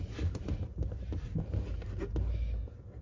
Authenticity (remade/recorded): recorded